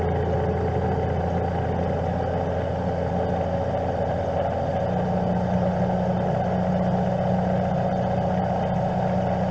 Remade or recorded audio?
recorded